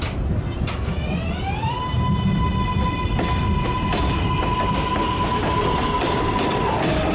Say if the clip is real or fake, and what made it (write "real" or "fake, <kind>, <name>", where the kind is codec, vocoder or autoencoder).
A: real